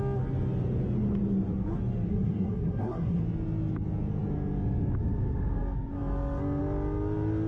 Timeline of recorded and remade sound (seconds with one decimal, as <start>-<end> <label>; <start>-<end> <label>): 0.0-2.1 recorded; 2.1-3.2 remade; 3.2-7.5 recorded